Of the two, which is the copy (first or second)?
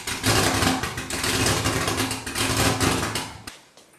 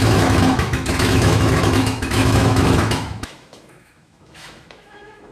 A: second